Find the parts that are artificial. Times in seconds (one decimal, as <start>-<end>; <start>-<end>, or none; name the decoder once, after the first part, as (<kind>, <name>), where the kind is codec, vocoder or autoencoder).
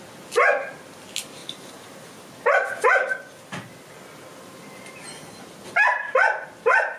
none